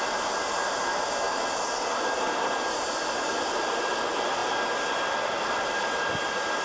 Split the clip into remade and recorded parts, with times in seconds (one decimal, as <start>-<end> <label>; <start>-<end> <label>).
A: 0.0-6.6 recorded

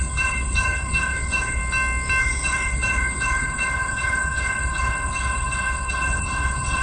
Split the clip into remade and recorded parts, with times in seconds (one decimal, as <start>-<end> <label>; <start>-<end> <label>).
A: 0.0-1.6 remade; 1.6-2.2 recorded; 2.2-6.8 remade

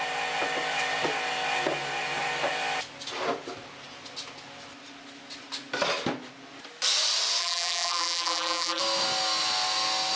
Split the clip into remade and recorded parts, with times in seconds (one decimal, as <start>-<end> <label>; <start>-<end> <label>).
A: 0.0-7.4 recorded; 7.4-8.8 remade; 8.8-10.2 recorded